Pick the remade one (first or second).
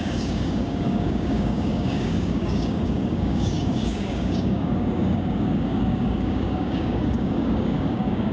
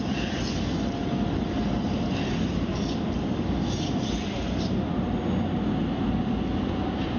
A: first